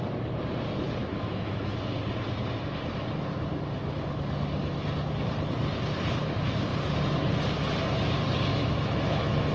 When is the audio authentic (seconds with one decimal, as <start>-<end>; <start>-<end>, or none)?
0.0-1.0; 1.7-8.5